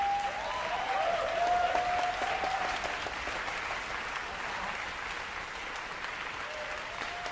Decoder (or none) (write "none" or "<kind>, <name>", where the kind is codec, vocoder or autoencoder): none